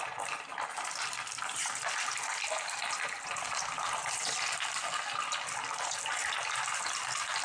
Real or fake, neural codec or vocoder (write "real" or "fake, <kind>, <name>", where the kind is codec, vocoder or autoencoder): real